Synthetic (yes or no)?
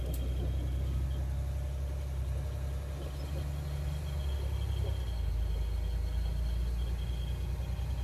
no